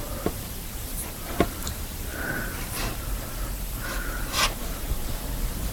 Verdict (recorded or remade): remade